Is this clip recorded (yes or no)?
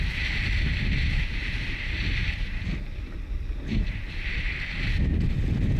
yes